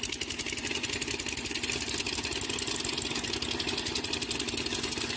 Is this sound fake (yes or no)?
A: no